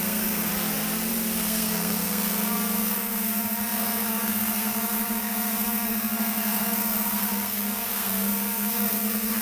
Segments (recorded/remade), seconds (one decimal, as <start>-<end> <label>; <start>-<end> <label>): 0.0-0.5 remade; 0.5-1.4 recorded; 1.4-9.4 remade